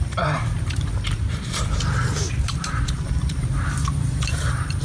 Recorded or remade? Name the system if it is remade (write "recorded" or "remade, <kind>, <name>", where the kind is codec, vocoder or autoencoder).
remade, vocoder, BigVGAN v2